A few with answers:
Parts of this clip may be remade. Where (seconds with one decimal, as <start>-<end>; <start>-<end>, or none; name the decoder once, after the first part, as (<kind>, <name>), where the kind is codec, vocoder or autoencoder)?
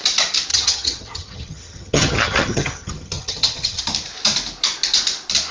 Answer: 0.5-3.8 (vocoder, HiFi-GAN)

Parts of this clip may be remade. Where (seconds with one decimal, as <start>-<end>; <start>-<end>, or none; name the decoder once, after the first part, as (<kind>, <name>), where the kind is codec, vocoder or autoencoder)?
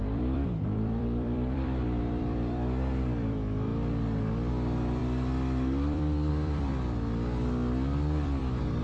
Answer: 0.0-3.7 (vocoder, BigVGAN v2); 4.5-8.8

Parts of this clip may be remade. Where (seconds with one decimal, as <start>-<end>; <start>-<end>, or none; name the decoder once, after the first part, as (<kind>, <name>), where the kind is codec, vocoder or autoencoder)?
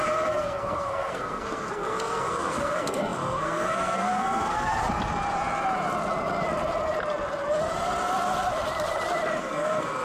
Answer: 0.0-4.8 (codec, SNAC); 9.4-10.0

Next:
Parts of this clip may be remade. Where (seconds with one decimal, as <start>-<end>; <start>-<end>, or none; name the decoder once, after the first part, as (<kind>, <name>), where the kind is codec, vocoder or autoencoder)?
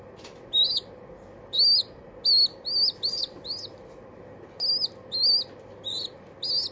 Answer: none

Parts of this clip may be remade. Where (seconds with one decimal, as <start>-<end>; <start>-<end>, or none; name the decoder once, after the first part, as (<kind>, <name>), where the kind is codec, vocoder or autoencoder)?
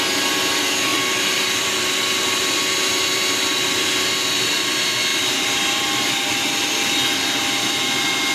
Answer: 0.9-2.6 (vocoder, BigVGAN v2); 5.1-6.9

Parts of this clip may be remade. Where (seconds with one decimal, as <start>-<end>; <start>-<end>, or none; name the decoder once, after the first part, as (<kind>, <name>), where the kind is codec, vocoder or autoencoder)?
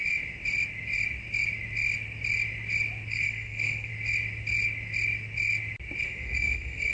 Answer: 3.1-3.9 (codec, SNAC); 6.0-6.9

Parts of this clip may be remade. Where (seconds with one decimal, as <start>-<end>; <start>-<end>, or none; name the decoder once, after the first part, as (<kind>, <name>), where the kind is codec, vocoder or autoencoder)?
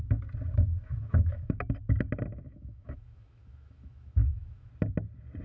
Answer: 0.8-1.6 (autoencoder, DAC-VAE); 2.3-4.7